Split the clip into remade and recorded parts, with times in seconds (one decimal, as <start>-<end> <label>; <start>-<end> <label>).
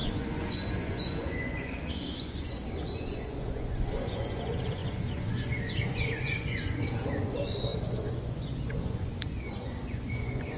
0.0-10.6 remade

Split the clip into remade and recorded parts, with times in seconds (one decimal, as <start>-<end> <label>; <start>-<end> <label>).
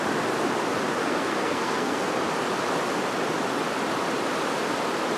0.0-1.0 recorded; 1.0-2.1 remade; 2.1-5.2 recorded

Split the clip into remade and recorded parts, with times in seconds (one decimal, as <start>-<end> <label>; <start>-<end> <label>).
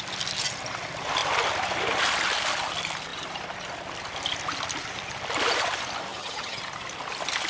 0.0-6.1 recorded; 6.1-6.6 remade; 6.6-7.5 recorded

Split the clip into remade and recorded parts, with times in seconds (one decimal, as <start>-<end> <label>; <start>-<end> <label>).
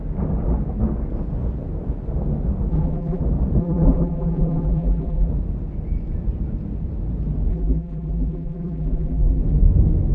0.0-2.7 recorded; 2.7-3.2 remade; 3.2-3.6 recorded; 3.6-5.3 remade; 5.3-7.5 recorded; 7.5-9.4 remade; 9.4-10.1 recorded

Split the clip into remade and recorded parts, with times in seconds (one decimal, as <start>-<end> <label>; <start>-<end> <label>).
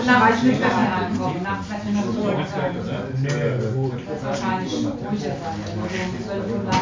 0.0-6.8 recorded